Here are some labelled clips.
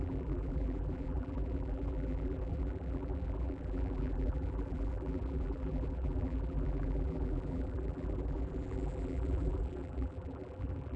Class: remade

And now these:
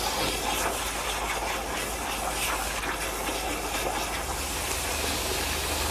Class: recorded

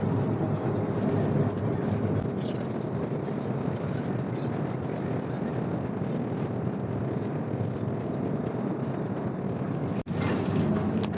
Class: recorded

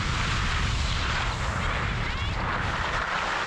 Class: recorded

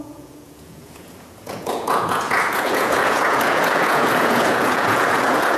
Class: remade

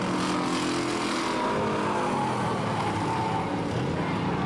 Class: recorded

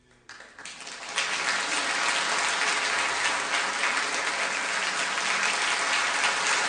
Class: recorded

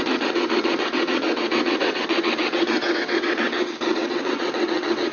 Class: remade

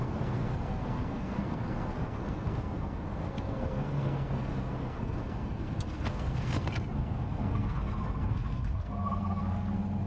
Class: remade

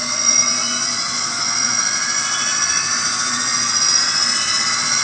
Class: remade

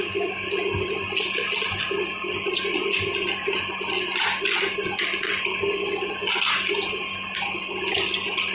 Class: recorded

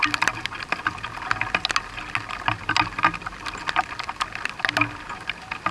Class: recorded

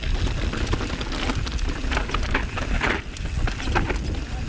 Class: recorded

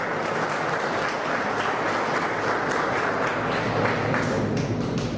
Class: recorded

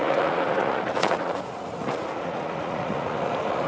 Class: remade